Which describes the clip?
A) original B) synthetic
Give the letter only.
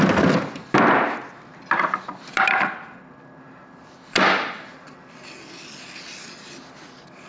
A